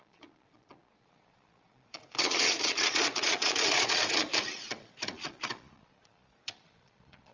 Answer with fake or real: fake